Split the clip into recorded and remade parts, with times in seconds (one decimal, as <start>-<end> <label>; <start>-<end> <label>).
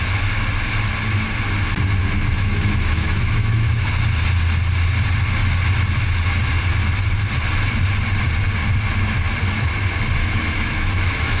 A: 0.0-2.0 recorded; 2.0-3.9 remade; 3.9-10.2 recorded; 10.2-11.4 remade